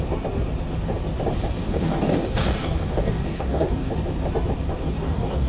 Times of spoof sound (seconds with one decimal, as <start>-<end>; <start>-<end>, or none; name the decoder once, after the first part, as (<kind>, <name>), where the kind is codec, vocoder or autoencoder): 1.6-3.9 (codec, DAC); 4.7-5.5

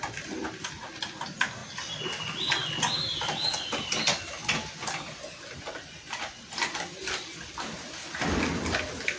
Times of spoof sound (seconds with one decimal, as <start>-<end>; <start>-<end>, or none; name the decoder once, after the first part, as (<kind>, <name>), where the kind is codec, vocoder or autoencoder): none

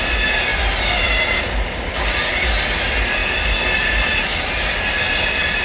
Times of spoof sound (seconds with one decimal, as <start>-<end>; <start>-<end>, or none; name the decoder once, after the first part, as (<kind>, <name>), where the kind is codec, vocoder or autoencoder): none

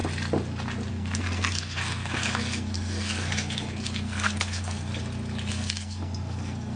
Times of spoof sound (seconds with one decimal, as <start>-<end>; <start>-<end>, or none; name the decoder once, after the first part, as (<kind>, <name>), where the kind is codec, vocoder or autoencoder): 0.9-4.9 (codec, SNAC); 5.5-6.8

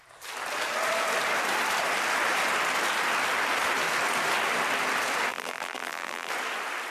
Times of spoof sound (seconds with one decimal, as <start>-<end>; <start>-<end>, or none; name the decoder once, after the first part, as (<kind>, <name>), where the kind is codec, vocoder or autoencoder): 5.3-6.3 (vocoder, BigVGAN v2)

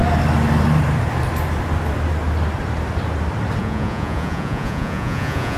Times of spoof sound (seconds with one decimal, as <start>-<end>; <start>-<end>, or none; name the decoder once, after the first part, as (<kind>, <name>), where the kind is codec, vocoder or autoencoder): 3.6-5.6 (vocoder, Vocos)

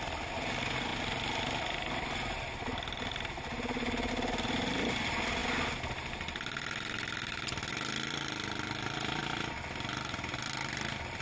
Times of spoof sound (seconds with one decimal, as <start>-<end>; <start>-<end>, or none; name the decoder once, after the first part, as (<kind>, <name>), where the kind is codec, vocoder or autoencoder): none

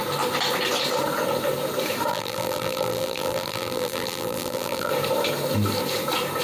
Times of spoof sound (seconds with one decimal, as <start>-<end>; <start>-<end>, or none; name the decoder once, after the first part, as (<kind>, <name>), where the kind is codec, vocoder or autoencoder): 2.1-4.9 (vocoder, BigVGAN v2)